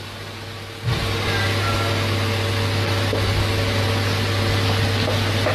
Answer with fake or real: real